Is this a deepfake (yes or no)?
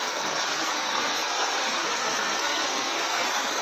yes